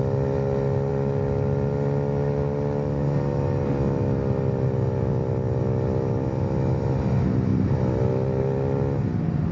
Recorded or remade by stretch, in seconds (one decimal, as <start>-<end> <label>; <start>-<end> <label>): 0.0-9.5 recorded